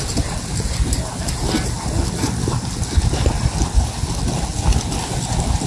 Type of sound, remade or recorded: recorded